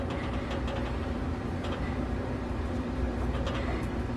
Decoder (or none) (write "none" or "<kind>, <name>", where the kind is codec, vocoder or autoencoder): none